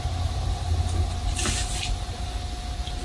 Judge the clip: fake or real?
real